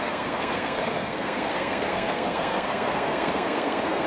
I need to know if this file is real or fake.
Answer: fake